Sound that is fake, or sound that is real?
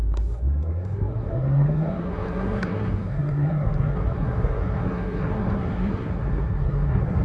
fake